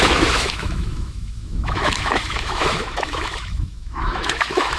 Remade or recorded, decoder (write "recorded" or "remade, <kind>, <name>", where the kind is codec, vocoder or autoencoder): remade, autoencoder, DAC-VAE